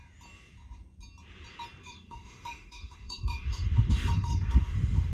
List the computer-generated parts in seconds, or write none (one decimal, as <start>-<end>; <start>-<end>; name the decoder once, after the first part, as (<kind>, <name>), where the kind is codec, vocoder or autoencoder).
1.8-5.1 (autoencoder, DAC-VAE)